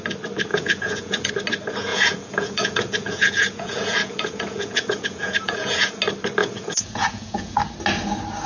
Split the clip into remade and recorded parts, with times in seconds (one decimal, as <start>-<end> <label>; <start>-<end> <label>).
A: 0.0-0.5 recorded; 0.5-1.3 remade; 1.3-1.9 recorded; 1.9-6.0 remade; 6.0-6.4 recorded; 6.4-7.6 remade; 7.6-8.5 recorded